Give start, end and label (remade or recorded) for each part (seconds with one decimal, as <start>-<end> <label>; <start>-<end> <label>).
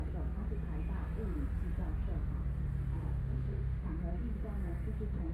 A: 0.0-3.0 recorded; 3.0-3.9 remade; 3.9-5.3 recorded